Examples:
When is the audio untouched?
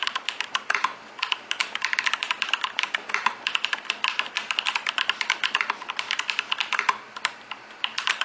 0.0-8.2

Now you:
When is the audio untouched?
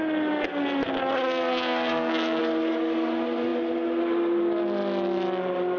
0.0-1.5; 2.4-5.8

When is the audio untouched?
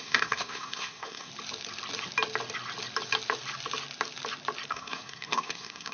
1.3-4.7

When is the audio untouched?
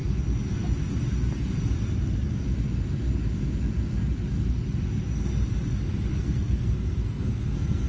0.0-6.1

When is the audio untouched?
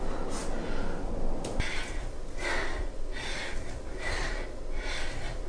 0.0-5.5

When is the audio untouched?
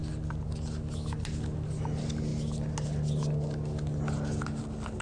0.0-5.0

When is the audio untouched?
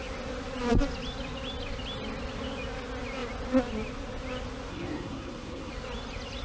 0.0-4.7; 5.7-6.4